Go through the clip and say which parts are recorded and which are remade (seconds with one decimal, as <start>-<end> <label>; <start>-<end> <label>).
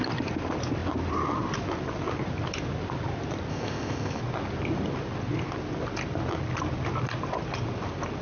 0.0-3.5 recorded; 3.5-4.2 remade; 4.2-8.2 recorded